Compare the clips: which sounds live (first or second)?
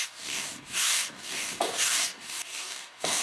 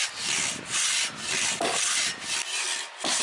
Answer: second